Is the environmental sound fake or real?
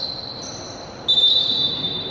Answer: real